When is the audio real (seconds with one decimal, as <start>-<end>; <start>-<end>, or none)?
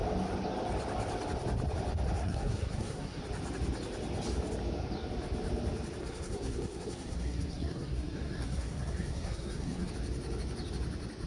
0.0-2.2; 3.2-6.0; 9.9-11.3